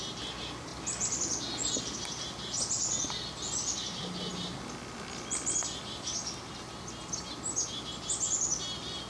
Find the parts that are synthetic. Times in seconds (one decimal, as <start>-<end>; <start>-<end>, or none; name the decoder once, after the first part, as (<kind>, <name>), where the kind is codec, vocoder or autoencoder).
none